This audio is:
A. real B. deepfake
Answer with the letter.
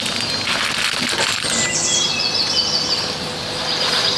A